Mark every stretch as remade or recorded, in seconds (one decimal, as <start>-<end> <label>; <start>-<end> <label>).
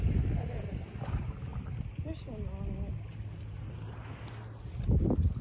0.0-5.4 recorded